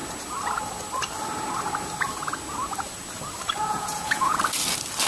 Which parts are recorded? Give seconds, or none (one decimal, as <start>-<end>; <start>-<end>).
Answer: 0.0-3.7; 4.4-5.1